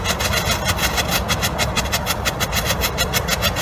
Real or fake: real